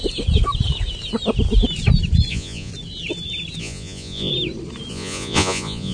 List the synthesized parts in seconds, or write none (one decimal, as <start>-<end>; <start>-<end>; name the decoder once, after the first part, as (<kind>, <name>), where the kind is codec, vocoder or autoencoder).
2.3-2.7 (vocoder, Vocos); 3.6-4.3; 4.9-5.9